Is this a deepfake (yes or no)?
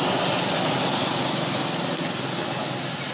no